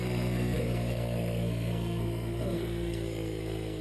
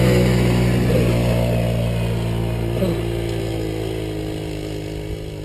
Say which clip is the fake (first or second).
first